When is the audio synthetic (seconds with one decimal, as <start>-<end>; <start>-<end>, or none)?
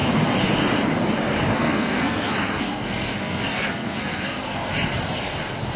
1.6-4.7